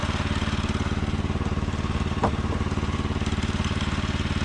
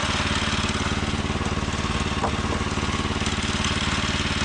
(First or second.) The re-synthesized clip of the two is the first